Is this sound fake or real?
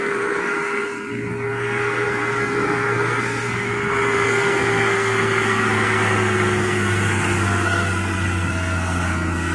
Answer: fake